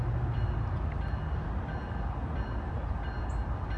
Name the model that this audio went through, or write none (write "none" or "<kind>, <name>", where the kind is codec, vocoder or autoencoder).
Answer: none